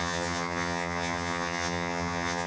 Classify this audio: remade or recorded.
remade